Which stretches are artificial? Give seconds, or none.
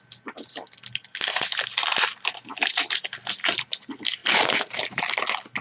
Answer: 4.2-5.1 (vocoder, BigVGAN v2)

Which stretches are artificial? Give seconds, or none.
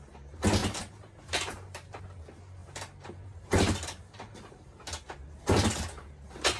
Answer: 0.6-2.0 (vocoder, BigVGAN v2); 2.6-6.6